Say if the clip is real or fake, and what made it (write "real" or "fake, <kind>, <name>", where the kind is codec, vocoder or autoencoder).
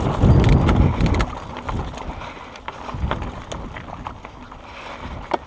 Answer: real